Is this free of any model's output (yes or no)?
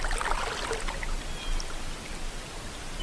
yes